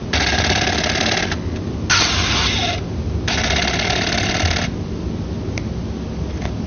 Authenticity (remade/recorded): recorded